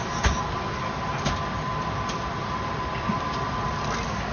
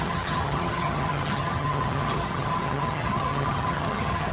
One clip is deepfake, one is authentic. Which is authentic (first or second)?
first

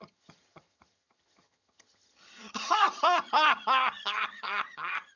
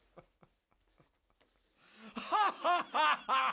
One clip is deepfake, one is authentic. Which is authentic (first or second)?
second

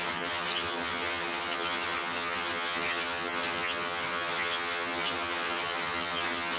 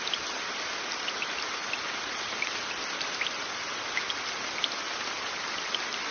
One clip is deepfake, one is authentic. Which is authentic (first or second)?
second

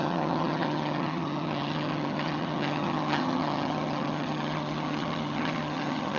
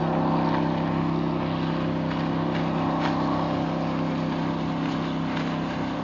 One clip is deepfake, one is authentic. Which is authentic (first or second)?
second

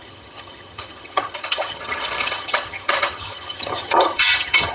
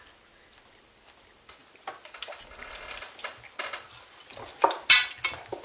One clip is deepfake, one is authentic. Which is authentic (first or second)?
second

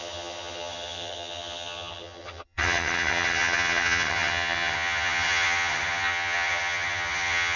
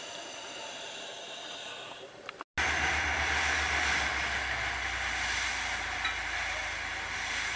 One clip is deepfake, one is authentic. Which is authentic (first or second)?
second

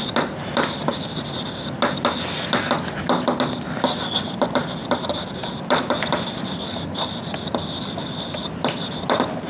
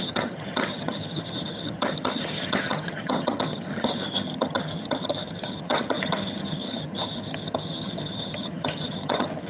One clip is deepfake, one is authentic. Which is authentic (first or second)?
first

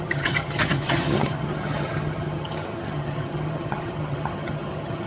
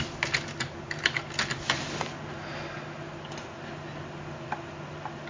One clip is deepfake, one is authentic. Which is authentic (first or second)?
second